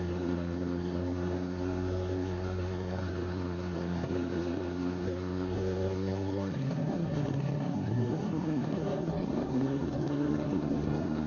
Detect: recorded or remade remade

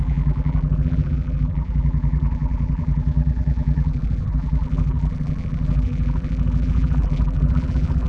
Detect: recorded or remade remade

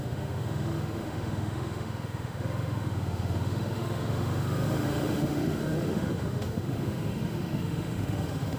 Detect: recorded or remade remade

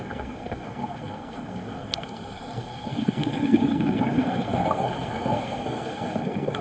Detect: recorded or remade remade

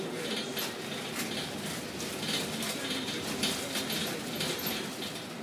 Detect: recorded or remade recorded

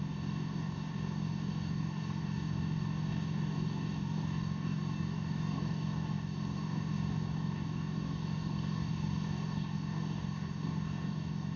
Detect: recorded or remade remade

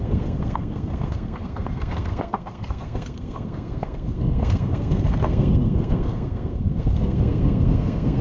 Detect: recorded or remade remade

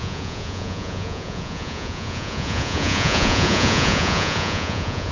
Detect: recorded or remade remade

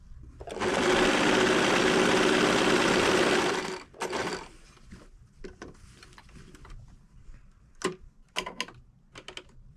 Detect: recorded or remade recorded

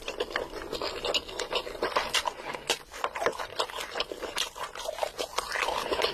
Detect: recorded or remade recorded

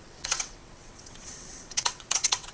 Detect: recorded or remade remade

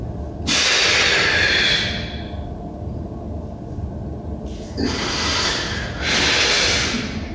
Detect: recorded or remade recorded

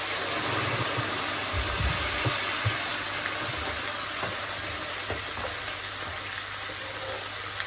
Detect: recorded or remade recorded